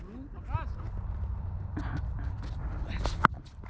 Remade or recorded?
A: recorded